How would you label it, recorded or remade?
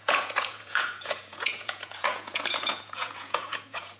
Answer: remade